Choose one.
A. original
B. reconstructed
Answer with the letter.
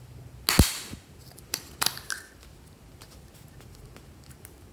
A